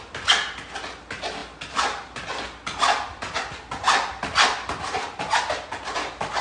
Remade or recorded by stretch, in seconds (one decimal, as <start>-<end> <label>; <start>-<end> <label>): 0.0-6.4 recorded